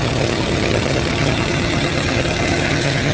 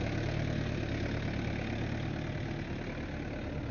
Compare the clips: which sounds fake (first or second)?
first